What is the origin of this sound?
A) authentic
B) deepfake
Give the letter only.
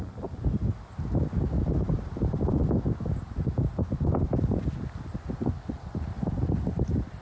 A